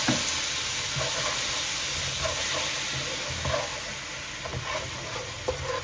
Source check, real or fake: real